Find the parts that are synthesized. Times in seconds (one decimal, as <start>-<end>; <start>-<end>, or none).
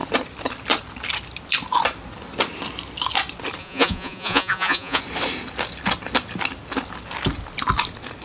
3.6-5.0